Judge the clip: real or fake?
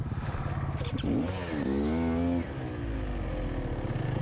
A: real